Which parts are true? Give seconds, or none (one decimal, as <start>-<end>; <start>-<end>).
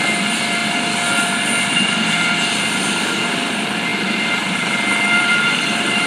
0.6-3.3